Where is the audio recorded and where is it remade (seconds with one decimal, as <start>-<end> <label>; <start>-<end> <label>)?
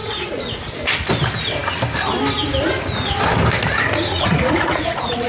0.0-0.7 remade; 0.7-4.1 recorded; 4.1-5.3 remade